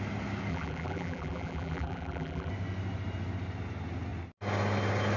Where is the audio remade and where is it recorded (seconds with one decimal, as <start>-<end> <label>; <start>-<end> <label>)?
0.0-0.5 recorded; 0.5-2.5 remade; 2.5-5.2 recorded